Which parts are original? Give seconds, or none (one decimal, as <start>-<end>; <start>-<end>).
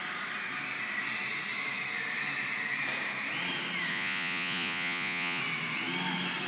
0.0-3.9; 5.4-6.5